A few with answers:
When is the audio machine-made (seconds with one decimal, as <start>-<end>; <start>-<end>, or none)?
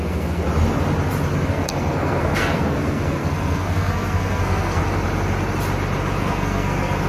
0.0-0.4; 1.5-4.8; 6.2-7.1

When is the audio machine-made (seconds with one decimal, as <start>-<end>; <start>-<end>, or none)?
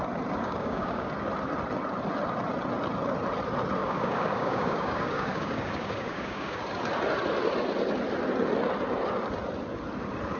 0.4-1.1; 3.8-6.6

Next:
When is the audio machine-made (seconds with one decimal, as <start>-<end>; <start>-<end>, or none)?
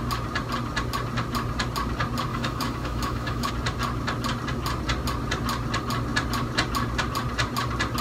2.3-3.5